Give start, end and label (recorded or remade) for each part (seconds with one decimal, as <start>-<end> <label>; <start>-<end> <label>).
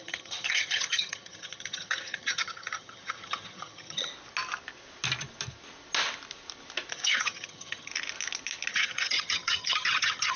0.0-4.1 remade; 4.1-6.9 recorded; 6.9-7.9 remade; 7.9-8.7 recorded; 8.7-10.4 remade